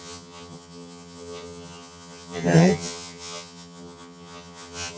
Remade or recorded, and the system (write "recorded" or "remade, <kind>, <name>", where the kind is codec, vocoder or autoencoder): remade, vocoder, HiFi-GAN